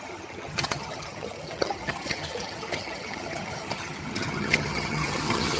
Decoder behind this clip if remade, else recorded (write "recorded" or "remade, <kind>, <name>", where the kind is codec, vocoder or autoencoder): remade, vocoder, HiFi-GAN